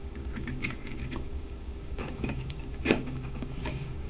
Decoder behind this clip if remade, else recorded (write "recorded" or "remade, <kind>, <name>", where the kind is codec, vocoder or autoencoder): remade, codec, DAC